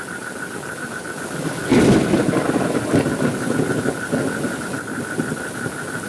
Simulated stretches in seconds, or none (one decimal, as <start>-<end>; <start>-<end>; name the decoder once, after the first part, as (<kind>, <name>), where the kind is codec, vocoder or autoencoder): none